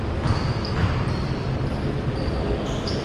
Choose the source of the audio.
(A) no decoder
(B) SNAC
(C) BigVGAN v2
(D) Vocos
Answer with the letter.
C